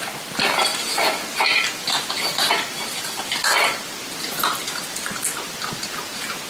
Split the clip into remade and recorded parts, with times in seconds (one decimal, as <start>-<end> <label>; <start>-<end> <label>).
0.0-0.7 recorded; 0.7-1.2 remade; 1.2-6.5 recorded